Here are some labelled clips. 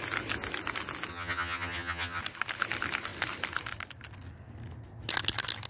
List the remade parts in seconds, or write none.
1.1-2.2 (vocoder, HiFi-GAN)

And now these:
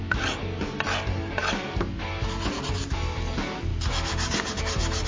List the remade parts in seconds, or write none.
none

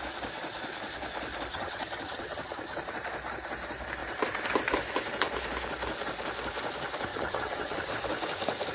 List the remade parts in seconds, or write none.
1.5-2.8 (vocoder, HiFi-GAN); 7.1-7.9